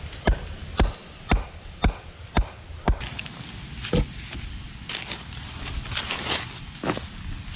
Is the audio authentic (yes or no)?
yes